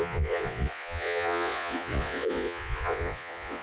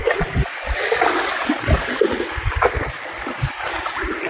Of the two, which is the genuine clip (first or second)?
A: second